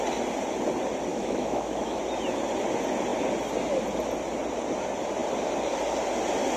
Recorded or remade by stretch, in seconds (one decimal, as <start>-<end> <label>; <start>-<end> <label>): 0.0-1.1 recorded; 1.1-2.0 remade; 2.0-6.6 recorded